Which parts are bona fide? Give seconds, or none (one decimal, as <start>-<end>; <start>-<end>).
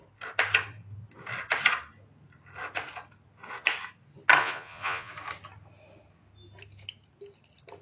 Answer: 0.0-4.4; 5.1-7.8